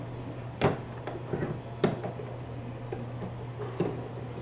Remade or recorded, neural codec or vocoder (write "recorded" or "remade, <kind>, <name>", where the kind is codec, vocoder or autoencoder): recorded